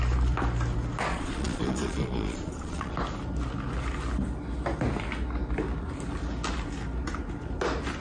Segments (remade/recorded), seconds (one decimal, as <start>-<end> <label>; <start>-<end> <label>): 0.0-1.1 recorded; 1.1-2.9 remade; 2.9-8.0 recorded